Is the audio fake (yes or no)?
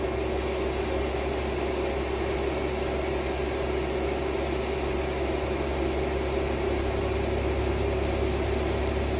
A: no